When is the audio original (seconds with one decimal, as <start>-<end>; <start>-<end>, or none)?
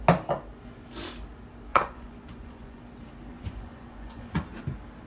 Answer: 0.0-1.7; 2.8-3.3; 4.6-5.1